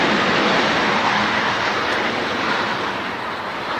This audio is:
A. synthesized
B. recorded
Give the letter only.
B